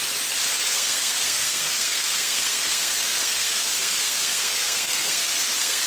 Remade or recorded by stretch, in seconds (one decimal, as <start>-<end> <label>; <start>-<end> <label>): 0.0-0.5 recorded; 0.5-5.9 remade